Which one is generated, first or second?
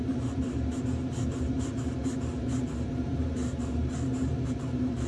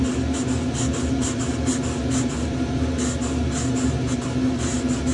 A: first